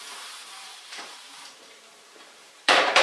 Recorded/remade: remade